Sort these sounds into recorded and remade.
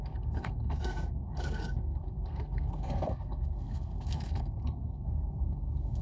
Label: remade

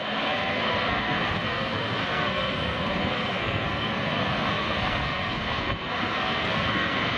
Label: remade